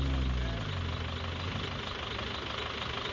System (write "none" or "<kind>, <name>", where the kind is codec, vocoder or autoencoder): none